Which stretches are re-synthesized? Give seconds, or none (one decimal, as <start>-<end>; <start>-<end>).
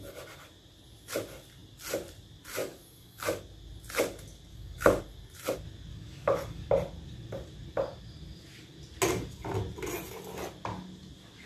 2.6-3.4; 4.5-5.0; 5.9-6.7